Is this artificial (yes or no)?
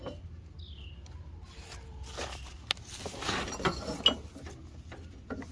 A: no